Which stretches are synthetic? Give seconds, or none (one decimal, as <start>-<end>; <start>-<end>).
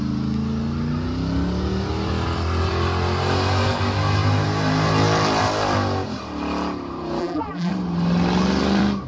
7.2-7.7